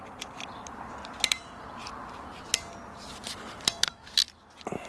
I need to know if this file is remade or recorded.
recorded